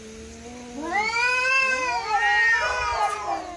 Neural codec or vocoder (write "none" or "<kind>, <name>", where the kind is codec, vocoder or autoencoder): none